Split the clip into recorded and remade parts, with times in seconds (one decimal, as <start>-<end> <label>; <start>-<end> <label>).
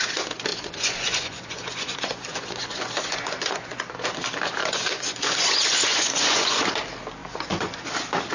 0.0-0.5 recorded; 0.5-3.8 remade; 3.8-4.6 recorded; 4.6-6.7 remade; 6.7-7.2 recorded; 7.2-7.8 remade; 7.8-8.3 recorded